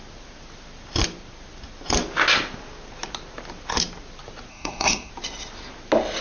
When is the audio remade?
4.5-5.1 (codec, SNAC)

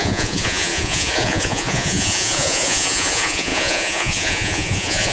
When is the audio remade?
0.0-5.1 (vocoder, Vocos)